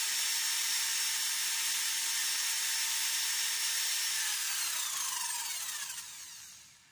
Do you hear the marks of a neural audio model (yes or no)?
no